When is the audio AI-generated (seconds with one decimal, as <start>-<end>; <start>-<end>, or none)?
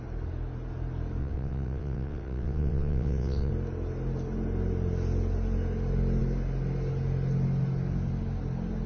1.2-3.5